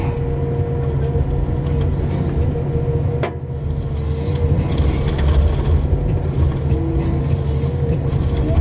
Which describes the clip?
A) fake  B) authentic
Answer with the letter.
B